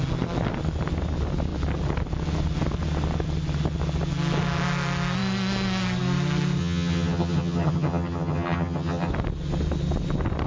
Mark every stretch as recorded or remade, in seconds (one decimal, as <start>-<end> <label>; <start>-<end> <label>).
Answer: 0.0-6.6 recorded; 6.6-9.1 remade; 9.1-10.5 recorded